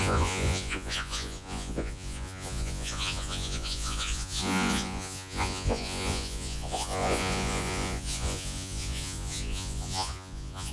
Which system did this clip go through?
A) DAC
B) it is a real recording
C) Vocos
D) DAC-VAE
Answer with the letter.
C